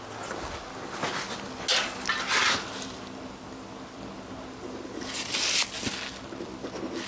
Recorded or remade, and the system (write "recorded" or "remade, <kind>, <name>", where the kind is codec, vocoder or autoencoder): recorded